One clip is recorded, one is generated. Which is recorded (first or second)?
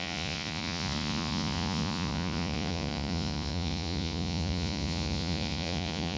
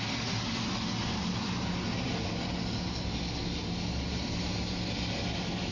second